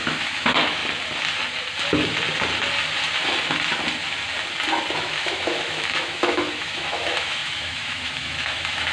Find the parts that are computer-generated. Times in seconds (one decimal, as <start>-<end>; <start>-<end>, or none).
0.0-0.8; 5.0-8.9